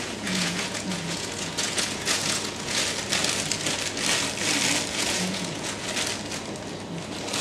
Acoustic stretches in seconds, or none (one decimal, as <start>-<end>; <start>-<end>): 2.8-4.9; 5.9-7.4